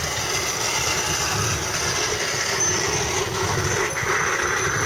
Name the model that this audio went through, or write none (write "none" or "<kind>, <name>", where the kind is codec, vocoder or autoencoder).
none